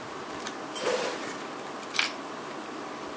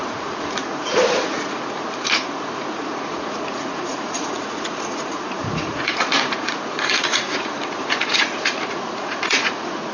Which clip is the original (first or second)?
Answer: first